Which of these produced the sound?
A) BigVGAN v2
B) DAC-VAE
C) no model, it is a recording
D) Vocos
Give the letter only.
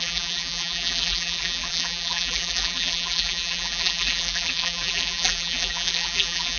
A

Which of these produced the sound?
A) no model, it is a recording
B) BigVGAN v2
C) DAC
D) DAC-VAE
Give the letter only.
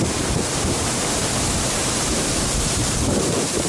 B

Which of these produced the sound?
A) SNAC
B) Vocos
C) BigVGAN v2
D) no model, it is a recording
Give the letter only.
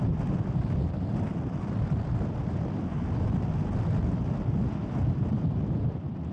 D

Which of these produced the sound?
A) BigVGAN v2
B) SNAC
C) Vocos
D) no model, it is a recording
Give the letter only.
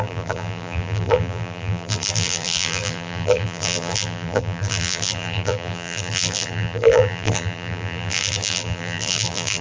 A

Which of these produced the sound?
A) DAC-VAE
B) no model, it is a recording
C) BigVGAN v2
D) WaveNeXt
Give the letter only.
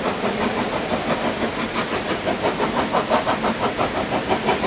C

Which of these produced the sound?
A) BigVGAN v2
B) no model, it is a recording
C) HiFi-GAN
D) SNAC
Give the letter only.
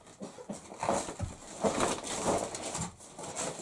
B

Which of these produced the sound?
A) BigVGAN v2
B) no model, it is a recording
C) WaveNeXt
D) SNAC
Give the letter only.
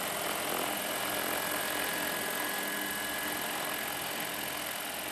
B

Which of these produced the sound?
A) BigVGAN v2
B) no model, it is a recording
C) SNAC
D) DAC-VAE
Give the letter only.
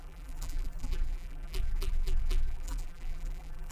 A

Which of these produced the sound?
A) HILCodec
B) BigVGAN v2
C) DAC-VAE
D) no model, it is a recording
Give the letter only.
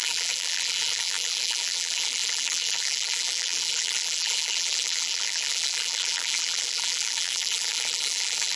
B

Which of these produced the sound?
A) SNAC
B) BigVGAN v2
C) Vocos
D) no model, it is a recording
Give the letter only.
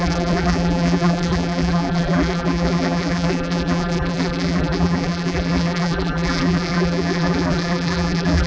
B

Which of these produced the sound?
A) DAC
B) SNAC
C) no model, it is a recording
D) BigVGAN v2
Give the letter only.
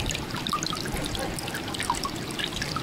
C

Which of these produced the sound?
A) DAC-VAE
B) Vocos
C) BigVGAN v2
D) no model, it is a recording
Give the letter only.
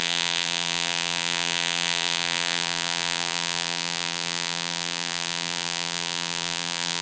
C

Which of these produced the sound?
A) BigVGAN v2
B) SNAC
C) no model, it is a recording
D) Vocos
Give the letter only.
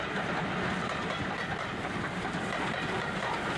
A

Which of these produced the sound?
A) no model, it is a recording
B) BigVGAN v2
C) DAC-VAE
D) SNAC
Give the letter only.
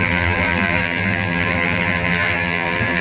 B